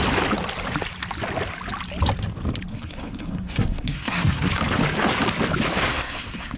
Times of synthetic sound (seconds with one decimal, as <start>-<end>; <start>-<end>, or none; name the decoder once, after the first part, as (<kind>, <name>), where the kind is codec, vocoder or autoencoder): 2.7-4.5 (codec, SNAC); 5.9-6.6